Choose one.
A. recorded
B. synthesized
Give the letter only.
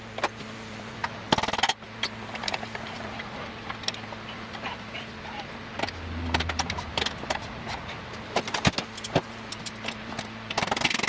A